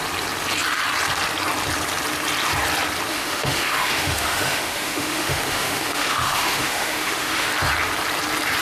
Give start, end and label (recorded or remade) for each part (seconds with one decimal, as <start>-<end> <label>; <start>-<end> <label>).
0.0-3.1 recorded; 3.1-7.5 remade; 7.5-8.6 recorded